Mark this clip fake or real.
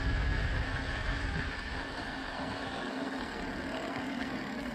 fake